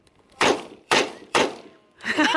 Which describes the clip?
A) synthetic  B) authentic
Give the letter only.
A